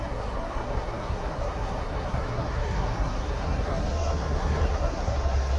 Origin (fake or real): fake